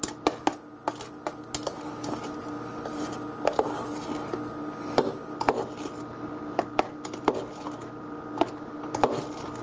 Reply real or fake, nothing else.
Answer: real